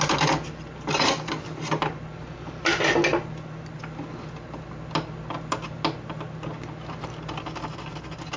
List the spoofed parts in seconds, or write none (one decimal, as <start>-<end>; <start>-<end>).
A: none